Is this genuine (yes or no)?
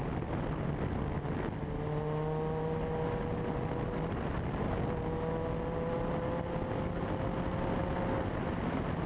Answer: yes